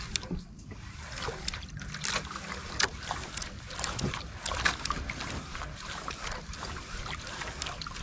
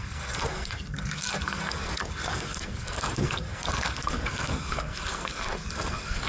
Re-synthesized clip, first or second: second